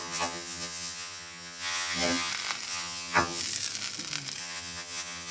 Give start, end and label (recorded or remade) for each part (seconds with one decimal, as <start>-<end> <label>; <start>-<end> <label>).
0.0-2.3 remade; 2.3-2.7 recorded; 2.7-3.4 remade; 3.4-4.4 recorded; 4.4-5.3 remade